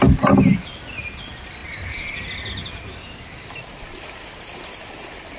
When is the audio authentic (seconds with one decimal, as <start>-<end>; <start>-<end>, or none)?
0.0-5.4